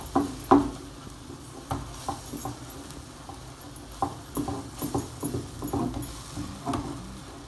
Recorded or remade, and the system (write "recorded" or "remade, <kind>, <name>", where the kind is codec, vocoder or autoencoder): recorded